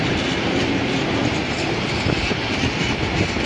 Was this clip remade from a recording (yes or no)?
no